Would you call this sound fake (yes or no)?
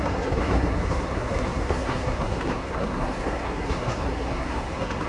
yes